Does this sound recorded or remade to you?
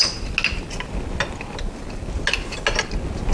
recorded